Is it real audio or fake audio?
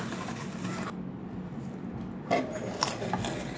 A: real